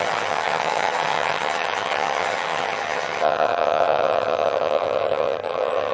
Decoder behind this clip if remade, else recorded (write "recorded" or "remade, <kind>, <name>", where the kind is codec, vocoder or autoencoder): remade, vocoder, HiFi-GAN